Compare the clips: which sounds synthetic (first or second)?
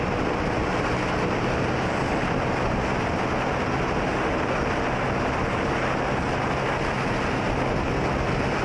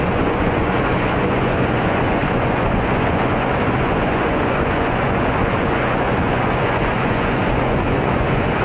second